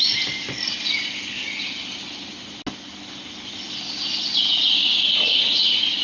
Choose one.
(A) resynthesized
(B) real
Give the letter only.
B